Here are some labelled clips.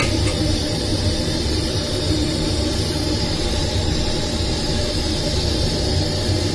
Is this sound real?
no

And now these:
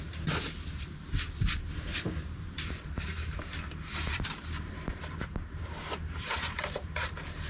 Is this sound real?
no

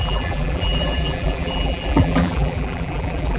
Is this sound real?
no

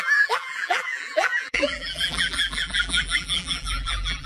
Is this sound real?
no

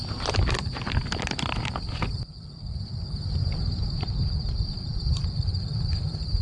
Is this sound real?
no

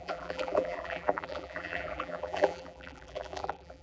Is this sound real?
no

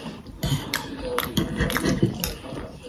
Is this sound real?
no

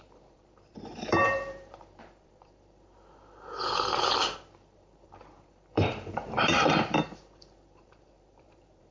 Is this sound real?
no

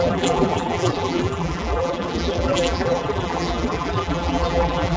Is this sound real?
no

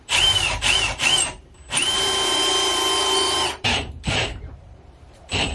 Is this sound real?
no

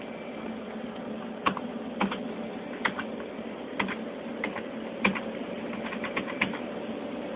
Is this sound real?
yes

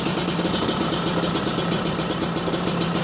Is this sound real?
no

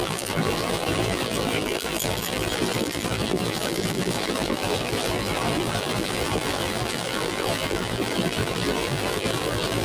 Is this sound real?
no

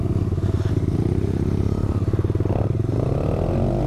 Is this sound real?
yes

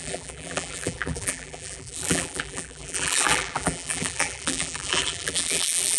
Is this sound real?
no